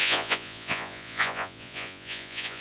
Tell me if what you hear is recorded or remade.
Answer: remade